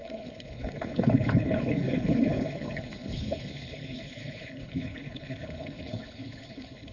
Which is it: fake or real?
fake